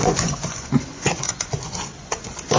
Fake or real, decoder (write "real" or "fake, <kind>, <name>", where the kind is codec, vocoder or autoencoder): fake, vocoder, Vocos